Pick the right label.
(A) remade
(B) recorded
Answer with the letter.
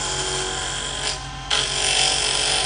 B